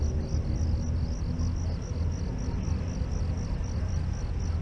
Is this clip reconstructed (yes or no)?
no